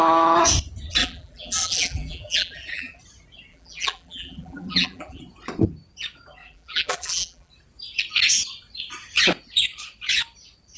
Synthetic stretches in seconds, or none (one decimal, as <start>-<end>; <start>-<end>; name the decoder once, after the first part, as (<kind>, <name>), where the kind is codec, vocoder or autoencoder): 1.0-3.0 (vocoder, BigVGAN v2); 3.5-5.2; 6.4-7.5